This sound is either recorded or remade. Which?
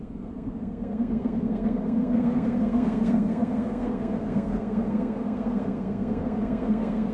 remade